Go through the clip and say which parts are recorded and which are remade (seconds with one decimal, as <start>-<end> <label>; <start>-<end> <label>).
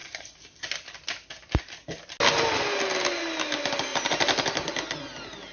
0.0-5.5 recorded